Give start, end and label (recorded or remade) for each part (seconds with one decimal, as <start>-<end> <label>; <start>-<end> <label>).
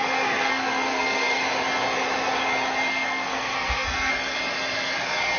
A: 0.0-1.4 remade; 1.4-2.9 recorded; 2.9-4.1 remade; 4.1-5.4 recorded